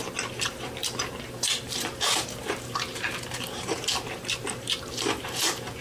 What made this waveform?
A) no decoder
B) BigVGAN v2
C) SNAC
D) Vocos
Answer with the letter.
B